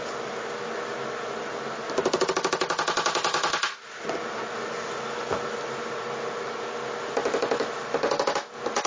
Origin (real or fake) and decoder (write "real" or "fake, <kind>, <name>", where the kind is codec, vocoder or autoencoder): real